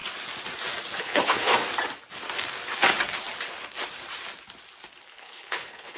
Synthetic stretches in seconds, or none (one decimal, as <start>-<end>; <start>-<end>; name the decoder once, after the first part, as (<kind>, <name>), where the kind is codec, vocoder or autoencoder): 1.0-1.5 (codec, HILCodec); 5.0-6.0